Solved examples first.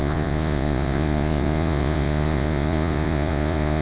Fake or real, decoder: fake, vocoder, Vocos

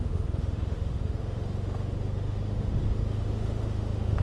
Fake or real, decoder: fake, autoencoder, DAC-VAE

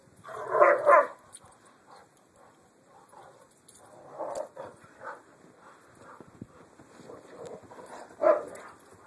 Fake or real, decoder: real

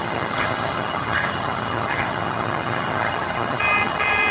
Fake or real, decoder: fake, vocoder, HiFi-GAN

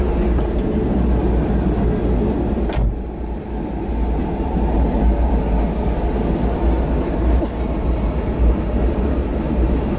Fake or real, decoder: real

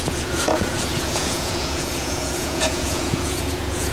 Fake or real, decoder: fake, vocoder, Vocos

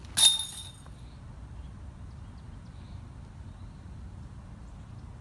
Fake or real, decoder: real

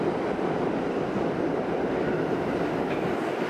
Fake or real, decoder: fake, vocoder, BigVGAN v2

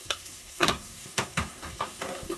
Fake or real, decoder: fake, codec, SNAC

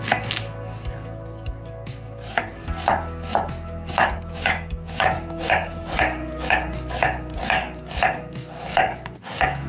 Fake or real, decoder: fake, codec, DAC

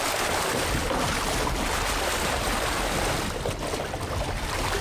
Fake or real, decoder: real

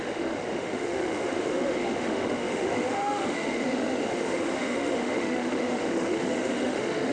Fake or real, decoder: fake, autoencoder, DAC-VAE